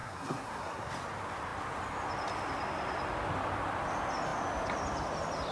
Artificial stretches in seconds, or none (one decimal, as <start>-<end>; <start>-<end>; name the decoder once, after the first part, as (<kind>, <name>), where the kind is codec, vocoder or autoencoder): 0.0-0.9 (codec, SNAC)